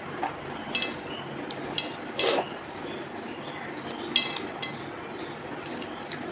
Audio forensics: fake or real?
real